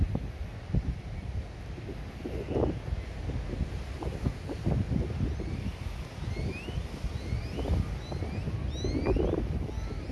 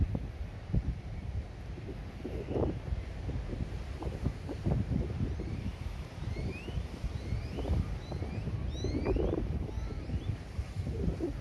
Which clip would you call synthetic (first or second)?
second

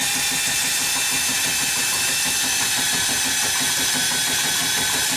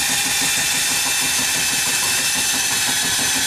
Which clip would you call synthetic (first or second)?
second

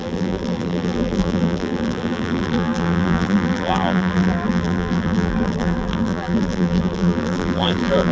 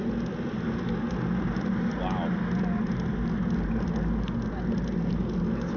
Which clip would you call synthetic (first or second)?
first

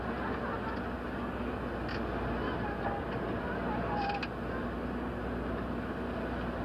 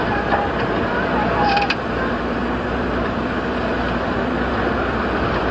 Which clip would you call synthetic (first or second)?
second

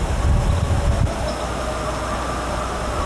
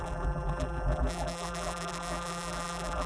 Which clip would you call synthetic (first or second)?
second